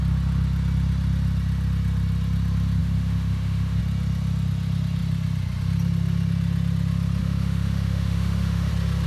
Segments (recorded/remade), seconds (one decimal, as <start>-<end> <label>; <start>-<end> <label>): 0.0-2.8 recorded; 2.8-3.8 remade; 3.8-7.2 recorded; 7.2-8.7 remade; 8.7-9.1 recorded